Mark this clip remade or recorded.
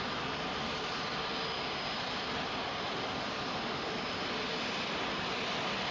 remade